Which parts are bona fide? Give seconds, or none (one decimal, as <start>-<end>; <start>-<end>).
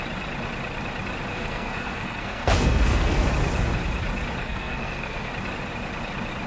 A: 0.0-1.3; 3.3-4.4; 5.3-6.5